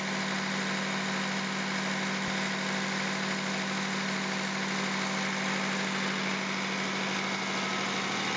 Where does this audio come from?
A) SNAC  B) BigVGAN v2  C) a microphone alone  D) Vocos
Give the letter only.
C